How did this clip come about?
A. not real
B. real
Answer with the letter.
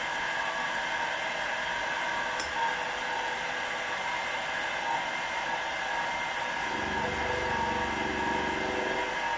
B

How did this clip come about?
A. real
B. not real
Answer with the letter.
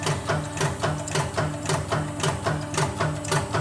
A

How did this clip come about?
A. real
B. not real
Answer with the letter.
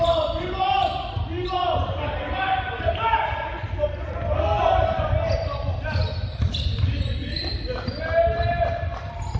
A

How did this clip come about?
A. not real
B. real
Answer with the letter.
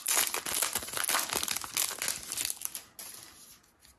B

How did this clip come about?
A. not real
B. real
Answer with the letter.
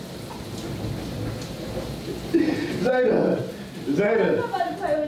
B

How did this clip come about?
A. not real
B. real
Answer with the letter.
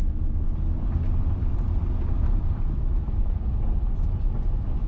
B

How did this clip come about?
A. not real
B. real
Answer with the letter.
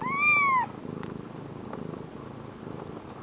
B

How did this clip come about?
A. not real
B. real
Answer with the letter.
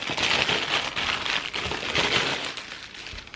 B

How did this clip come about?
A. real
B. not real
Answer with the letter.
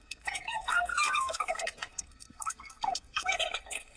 B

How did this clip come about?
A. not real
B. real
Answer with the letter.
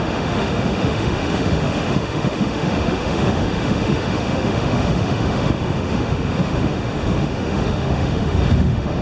A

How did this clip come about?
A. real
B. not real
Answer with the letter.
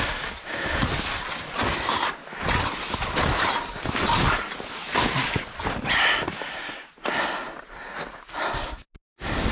A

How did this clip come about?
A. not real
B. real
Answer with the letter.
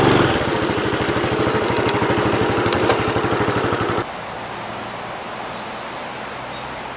B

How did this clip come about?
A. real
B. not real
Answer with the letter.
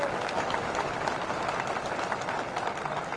A